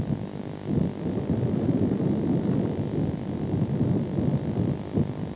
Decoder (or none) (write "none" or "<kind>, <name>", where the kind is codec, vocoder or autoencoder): none